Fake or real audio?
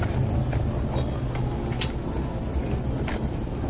real